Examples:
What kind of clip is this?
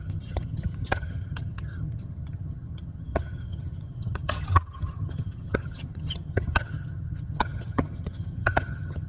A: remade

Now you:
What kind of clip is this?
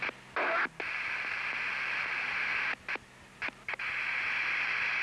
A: recorded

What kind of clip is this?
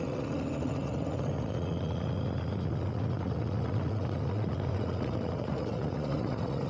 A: remade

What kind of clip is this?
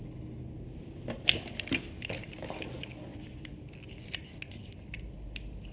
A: recorded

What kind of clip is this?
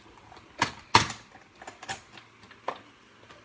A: recorded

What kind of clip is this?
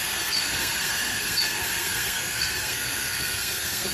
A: remade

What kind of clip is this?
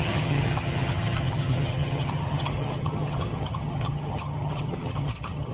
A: remade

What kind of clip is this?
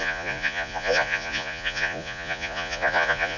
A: remade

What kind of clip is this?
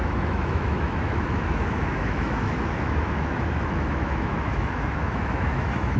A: remade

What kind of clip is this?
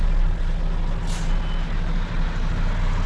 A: recorded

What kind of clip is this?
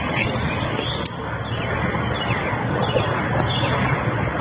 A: recorded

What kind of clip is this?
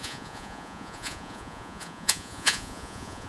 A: remade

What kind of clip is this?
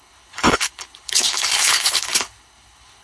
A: remade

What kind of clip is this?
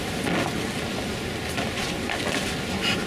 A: recorded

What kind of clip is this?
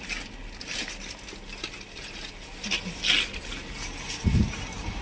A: recorded